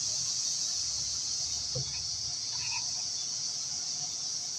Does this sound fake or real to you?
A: fake